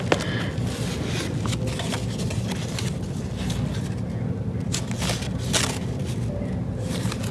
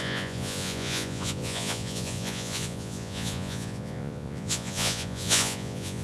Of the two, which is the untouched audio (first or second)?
first